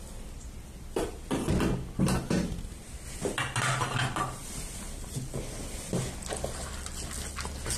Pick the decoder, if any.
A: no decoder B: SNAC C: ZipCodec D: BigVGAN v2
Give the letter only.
A